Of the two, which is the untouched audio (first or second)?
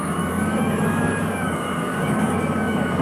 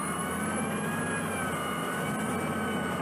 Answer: second